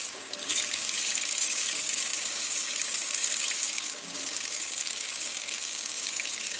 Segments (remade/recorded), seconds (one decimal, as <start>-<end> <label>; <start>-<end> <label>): 0.0-6.6 remade